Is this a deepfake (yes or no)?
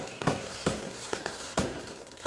yes